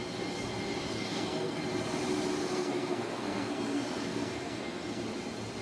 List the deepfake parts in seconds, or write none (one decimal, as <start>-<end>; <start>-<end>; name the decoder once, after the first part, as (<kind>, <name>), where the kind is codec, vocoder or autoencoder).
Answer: 1.0-1.6 (codec, SNAC); 2.4-5.0